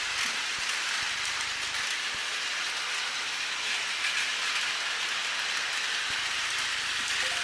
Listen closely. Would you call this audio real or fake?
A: real